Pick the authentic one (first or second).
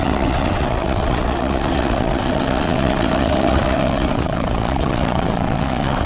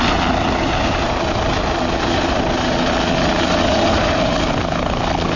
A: second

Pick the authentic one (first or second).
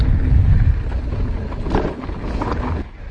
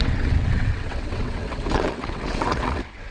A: first